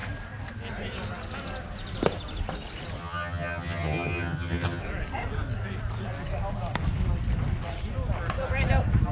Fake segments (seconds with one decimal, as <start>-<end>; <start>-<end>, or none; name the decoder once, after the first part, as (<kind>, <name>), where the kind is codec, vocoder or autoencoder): 3.0-4.8 (vocoder, HiFi-GAN)